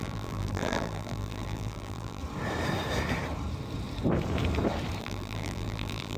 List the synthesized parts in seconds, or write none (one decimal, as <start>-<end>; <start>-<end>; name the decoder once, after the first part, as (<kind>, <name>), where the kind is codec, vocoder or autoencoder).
0.0-2.2 (vocoder, BigVGAN v2); 5.0-6.2